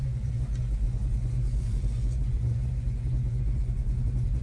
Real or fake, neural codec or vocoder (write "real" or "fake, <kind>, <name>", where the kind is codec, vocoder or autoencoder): fake, vocoder, Vocos